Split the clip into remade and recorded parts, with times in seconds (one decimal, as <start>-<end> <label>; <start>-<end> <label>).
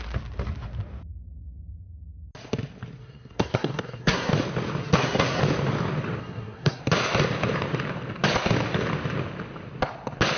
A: 0.0-3.0 recorded; 3.0-4.3 remade; 4.3-4.8 recorded; 4.8-5.4 remade; 5.4-6.2 recorded; 6.2-6.8 remade; 6.8-10.4 recorded